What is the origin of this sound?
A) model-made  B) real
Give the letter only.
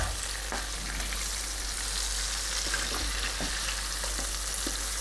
B